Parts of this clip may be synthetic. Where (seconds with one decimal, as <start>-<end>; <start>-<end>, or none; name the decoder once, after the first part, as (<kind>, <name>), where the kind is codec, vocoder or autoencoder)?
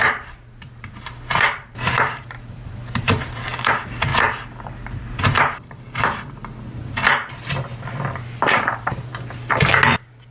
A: 0.0-6.4 (vocoder, BigVGAN v2); 8.4-9.1